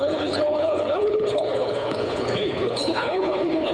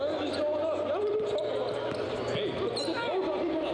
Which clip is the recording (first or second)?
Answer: second